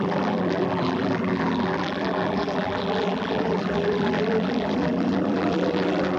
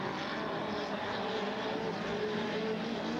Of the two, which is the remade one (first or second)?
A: first